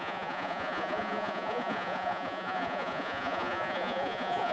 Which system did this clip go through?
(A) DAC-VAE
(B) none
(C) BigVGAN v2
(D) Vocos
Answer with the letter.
D